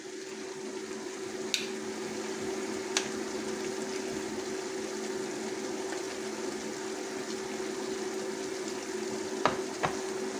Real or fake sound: real